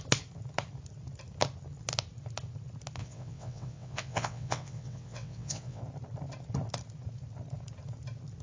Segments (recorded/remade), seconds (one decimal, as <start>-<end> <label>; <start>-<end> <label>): 0.0-3.0 recorded; 3.0-5.8 remade; 5.8-8.4 recorded